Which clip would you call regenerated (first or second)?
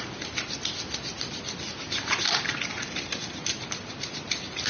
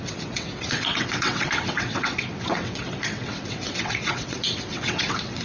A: second